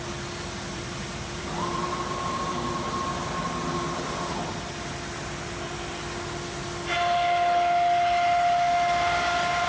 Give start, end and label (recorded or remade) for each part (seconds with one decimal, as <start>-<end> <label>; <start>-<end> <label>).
0.0-0.7 recorded; 0.7-2.7 remade; 2.7-9.7 recorded